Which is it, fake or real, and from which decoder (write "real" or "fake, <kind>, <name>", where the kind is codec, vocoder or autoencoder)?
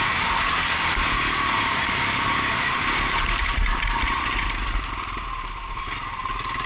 real